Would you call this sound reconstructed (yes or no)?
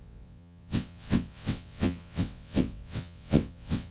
yes